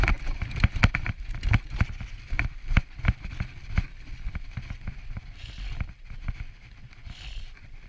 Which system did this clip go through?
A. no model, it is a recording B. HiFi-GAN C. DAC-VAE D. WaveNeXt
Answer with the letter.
A